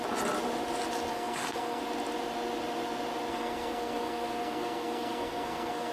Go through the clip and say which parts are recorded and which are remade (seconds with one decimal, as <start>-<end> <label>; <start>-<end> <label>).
0.0-1.1 recorded; 1.1-1.8 remade; 1.8-3.3 recorded; 3.3-5.9 remade